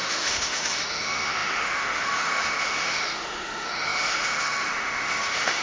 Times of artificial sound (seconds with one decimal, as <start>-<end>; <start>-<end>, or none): 0.0-5.6